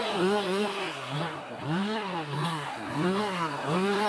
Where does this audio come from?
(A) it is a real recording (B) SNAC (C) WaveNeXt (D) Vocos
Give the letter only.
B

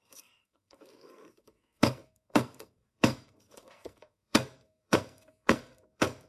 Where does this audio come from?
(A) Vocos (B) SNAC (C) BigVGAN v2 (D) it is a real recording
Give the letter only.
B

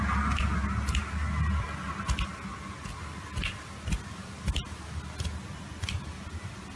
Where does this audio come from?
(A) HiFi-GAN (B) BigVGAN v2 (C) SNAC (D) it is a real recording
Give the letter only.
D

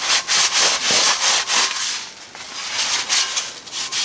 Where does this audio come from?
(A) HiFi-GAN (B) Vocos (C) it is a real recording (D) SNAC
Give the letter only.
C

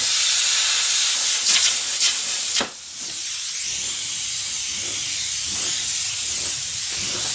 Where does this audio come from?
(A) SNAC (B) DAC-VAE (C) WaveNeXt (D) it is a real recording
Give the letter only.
D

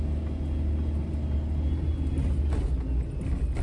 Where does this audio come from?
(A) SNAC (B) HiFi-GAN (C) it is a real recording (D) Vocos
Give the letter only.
C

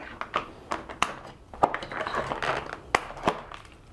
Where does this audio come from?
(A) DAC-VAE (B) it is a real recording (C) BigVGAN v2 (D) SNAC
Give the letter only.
B